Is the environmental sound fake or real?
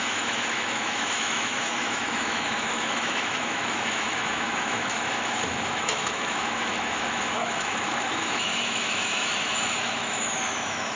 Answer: fake